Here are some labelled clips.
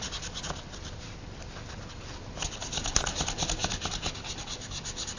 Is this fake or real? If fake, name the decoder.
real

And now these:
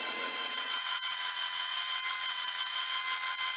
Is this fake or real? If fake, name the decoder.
fake, vocoder, WaveNeXt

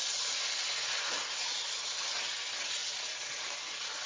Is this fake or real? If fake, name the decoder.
real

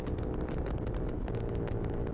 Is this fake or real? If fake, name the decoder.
real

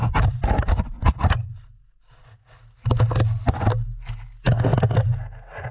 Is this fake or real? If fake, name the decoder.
real